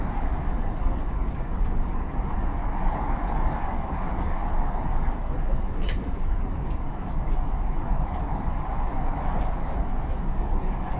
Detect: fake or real fake